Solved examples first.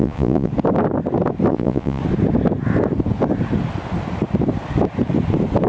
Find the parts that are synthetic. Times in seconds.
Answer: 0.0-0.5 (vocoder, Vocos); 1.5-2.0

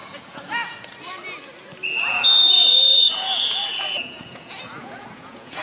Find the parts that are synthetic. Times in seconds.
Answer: 0.0-0.9 (vocoder, Vocos); 1.8-5.6

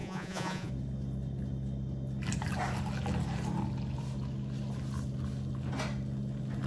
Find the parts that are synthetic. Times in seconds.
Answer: 0.0-0.7 (vocoder, Vocos)

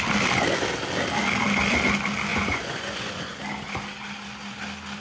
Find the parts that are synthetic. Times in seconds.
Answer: 2.3-3.4 (vocoder, Vocos)

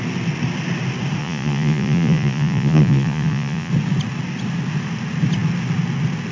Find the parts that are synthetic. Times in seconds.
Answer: 1.2-3.7 (vocoder, Vocos)

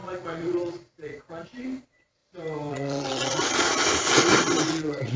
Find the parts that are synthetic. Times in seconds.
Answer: 0.0-2.2 (vocoder, Vocos); 2.7-3.8; 4.7-5.2

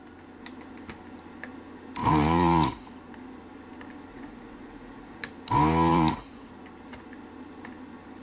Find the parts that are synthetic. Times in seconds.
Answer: 2.0-2.9 (vocoder, Vocos); 4.1-5.3; 5.9-6.5